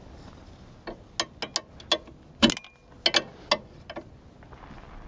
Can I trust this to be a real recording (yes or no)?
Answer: yes